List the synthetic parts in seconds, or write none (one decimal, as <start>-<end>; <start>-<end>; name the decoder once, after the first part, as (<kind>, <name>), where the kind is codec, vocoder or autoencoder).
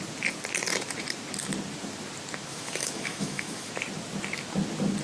2.5-3.7 (autoencoder, DAC-VAE)